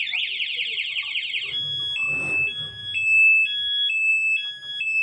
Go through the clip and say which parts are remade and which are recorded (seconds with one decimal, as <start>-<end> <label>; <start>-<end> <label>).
0.0-5.0 recorded